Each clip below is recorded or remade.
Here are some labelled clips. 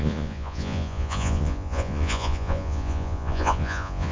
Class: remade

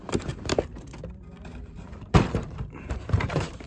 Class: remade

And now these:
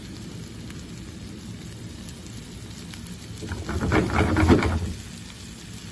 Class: recorded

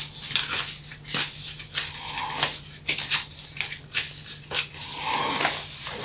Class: recorded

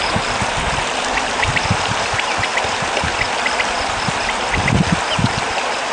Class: recorded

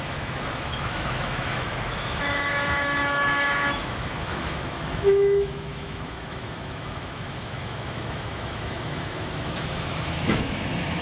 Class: remade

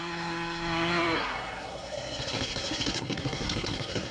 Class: remade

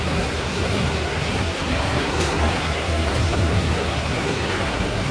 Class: remade